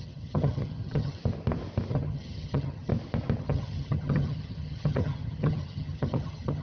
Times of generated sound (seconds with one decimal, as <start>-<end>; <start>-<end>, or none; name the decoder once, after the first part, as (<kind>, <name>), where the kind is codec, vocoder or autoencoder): 0.0-1.2 (vocoder, HiFi-GAN); 1.9-2.9; 3.4-6.6